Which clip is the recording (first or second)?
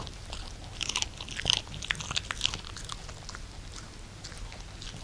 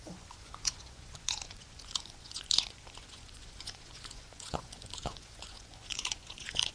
first